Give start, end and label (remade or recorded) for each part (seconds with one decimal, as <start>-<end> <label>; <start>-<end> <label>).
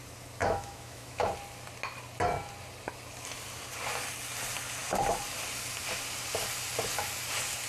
0.0-0.4 recorded; 0.4-1.3 remade; 1.3-7.7 recorded